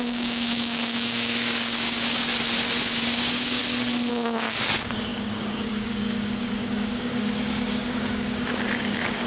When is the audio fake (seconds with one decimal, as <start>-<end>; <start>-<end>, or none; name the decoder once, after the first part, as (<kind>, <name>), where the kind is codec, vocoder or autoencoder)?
0.0-2.3 (codec, DAC); 2.8-3.6; 4.1-9.3